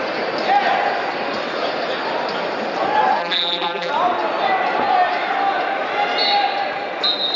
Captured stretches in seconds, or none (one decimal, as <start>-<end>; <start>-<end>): 0.0-3.2; 3.9-7.4

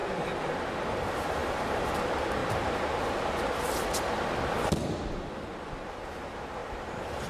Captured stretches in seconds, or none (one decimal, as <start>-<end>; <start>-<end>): 0.6-1.4; 2.0-7.3

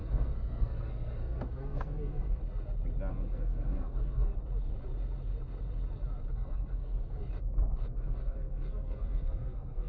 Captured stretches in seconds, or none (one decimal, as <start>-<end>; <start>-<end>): 2.4-3.1; 4.3-6.3; 7.2-7.8

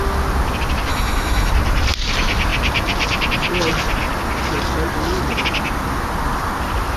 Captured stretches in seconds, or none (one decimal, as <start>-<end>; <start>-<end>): 0.0-0.9; 1.5-7.0

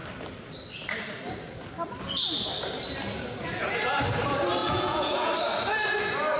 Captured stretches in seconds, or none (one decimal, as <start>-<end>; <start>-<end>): 0.0-4.6; 5.3-6.4